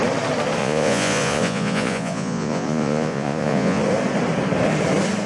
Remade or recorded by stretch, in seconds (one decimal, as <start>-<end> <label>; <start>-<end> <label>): 0.0-0.6 recorded; 0.6-3.8 remade; 3.8-5.3 recorded